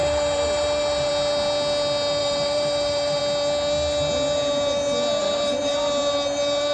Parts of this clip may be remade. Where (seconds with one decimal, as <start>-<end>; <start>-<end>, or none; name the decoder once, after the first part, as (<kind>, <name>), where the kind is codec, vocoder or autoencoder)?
0.0-1.1 (vocoder, BigVGAN v2); 2.2-3.2; 5.2-5.7